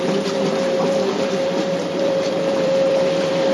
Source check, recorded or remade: remade